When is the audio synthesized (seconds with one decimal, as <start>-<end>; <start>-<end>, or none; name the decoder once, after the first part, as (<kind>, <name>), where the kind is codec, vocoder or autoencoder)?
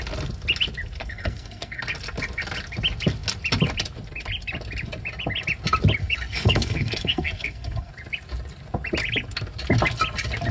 1.0-1.8 (codec, SNAC); 6.0-7.9